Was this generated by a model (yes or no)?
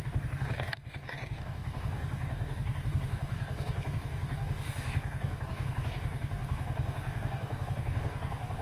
yes